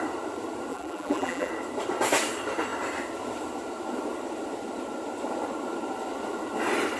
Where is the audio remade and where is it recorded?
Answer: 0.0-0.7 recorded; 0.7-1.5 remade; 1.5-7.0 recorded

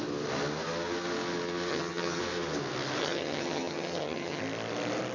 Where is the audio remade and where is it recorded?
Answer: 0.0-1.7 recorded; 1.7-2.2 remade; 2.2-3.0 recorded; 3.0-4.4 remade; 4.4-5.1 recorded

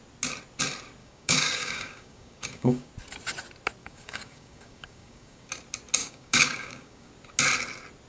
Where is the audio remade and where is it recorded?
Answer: 0.0-1.0 recorded; 1.0-2.9 remade; 2.9-3.8 recorded; 3.8-5.5 remade; 5.5-6.0 recorded; 6.0-7.1 remade; 7.1-8.1 recorded

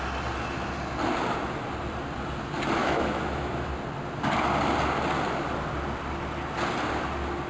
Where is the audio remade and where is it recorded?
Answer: 0.0-2.8 recorded; 2.8-3.7 remade; 3.7-7.5 recorded

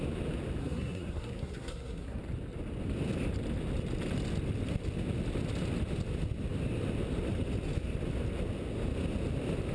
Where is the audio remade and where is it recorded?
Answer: 0.0-0.6 recorded; 0.6-2.2 remade; 2.2-9.7 recorded

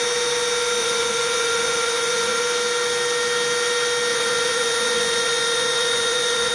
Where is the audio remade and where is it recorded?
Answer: 0.0-0.8 recorded; 0.8-2.4 remade; 2.4-4.1 recorded; 4.1-6.5 remade

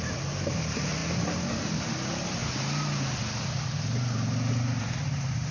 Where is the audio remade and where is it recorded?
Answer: 0.0-5.5 recorded

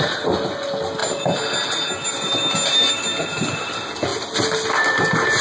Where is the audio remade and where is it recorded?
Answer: 0.0-5.4 recorded